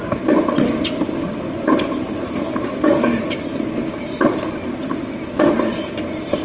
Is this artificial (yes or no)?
no